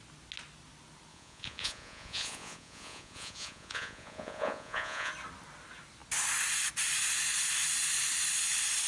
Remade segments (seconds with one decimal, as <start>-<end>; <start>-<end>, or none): 1.1-5.1